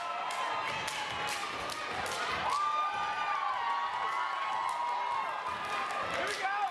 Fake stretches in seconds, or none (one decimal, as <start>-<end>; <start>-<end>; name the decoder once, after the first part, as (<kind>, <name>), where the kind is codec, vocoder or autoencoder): none